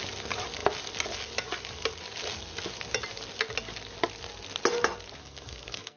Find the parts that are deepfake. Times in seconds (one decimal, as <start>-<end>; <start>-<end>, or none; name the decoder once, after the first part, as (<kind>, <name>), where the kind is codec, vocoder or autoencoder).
5.2-6.0 (codec, SNAC)